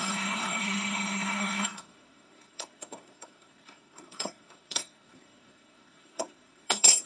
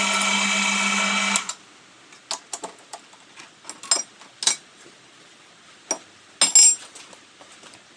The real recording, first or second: second